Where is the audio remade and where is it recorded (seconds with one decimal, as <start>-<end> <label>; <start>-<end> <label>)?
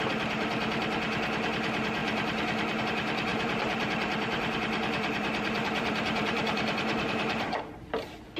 0.0-3.3 recorded; 3.3-7.9 remade; 7.9-8.4 recorded